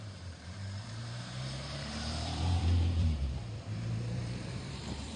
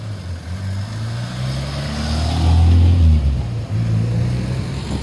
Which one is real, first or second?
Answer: second